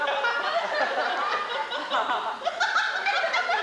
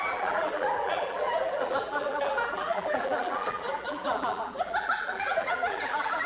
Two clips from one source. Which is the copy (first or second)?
second